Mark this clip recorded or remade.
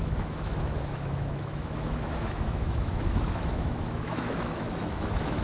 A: remade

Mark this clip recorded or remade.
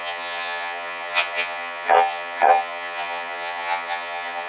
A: remade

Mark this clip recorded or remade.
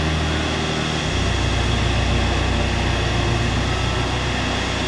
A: recorded